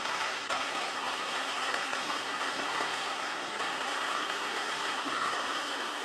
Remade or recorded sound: remade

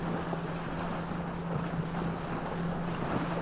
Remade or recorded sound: recorded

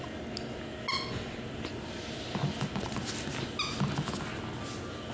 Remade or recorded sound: recorded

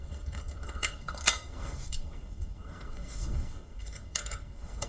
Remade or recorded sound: remade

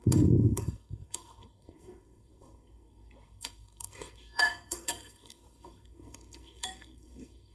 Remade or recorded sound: remade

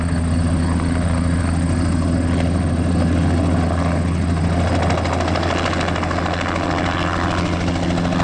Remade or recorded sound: recorded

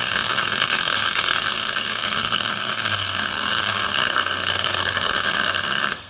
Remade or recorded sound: remade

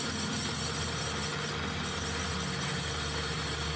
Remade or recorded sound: recorded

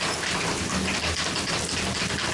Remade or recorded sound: recorded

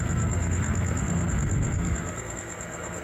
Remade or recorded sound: remade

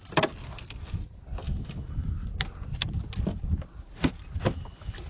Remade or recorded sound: recorded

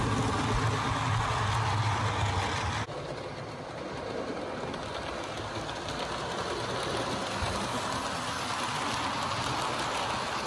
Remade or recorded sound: recorded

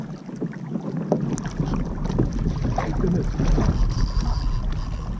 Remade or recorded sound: recorded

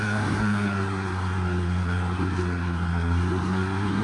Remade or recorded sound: remade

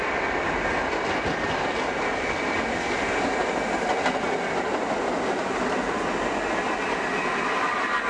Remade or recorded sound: recorded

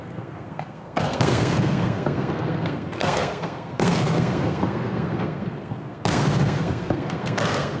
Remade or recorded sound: remade